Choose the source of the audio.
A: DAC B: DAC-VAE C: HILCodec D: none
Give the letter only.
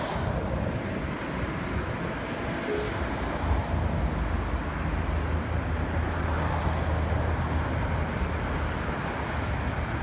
D